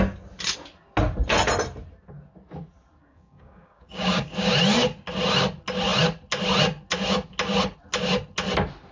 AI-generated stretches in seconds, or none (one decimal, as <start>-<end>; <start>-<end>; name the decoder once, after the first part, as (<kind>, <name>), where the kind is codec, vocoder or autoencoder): 3.0-4.5 (codec, DAC)